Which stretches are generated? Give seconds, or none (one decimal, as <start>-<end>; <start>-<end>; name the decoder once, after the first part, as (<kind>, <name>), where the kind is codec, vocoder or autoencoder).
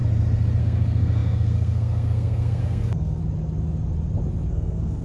0.6-3.2 (codec, SNAC); 4.5-5.0